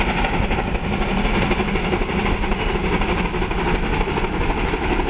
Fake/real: real